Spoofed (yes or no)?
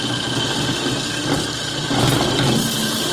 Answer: no